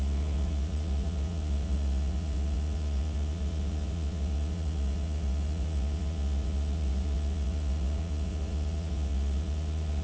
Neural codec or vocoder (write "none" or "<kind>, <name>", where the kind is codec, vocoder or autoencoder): vocoder, Vocos